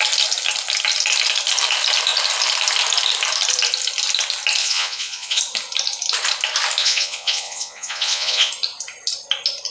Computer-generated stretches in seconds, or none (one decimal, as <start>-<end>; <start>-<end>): 4.6-5.4; 6.8-8.5

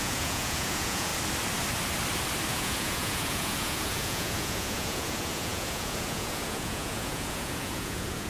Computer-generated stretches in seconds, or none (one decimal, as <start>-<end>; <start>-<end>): 0.0-1.1; 2.5-8.3

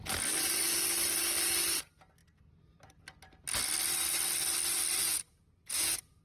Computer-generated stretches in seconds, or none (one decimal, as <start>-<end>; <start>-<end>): 5.0-6.2

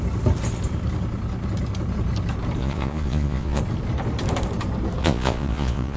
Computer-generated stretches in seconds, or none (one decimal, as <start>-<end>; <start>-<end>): 2.6-3.6; 5.0-6.0

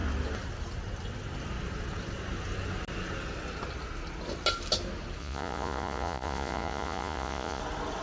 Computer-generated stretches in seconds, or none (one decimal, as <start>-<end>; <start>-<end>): 5.2-7.6

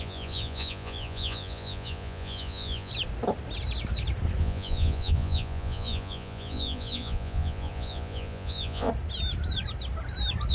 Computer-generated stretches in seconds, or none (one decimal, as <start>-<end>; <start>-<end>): 0.0-2.9; 4.4-8.9

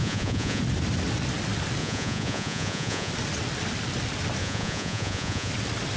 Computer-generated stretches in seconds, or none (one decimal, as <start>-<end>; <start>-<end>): 0.0-0.6; 1.8-3.1; 4.4-5.5

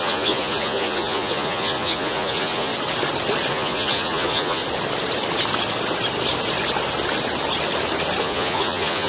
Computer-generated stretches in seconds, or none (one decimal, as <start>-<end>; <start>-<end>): 0.0-2.7; 3.5-4.6; 8.2-9.1